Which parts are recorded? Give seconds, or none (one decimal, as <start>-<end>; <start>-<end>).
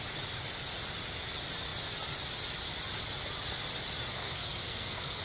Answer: 0.0-4.1